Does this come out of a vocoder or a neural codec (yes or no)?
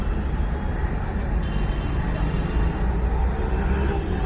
no